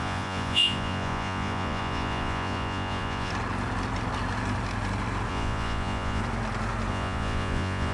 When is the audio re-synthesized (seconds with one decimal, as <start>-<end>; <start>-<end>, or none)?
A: 0.0-3.3; 5.3-6.2; 6.9-7.9